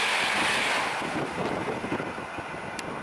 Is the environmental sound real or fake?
real